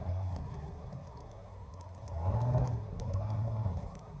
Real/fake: fake